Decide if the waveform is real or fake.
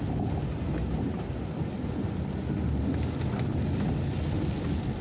real